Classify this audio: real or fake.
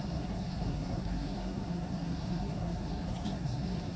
fake